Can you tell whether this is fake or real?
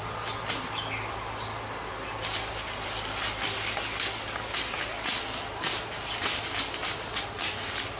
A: real